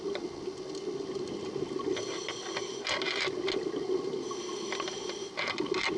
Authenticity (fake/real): real